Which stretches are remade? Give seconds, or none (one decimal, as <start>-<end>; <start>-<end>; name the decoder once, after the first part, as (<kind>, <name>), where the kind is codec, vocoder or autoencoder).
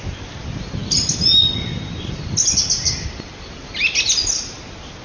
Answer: none